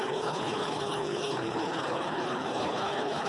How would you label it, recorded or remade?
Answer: remade